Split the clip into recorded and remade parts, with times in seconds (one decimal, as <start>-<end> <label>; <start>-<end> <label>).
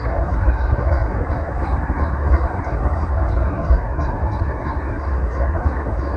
0.0-6.2 remade